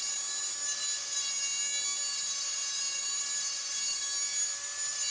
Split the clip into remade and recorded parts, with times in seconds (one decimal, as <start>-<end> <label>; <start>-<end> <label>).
0.0-5.1 recorded

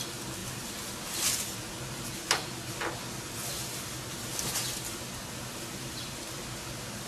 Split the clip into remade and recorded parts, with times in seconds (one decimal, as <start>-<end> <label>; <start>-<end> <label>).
0.0-7.1 recorded